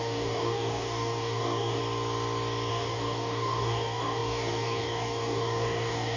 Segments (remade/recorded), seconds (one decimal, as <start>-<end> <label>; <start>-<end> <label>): 0.0-1.8 remade; 1.8-2.7 recorded; 2.7-6.2 remade